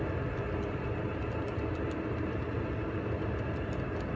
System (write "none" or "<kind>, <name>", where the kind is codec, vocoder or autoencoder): none